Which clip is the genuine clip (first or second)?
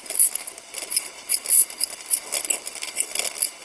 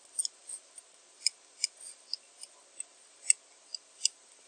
second